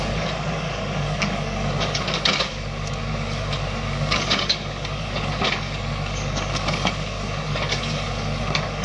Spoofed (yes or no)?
yes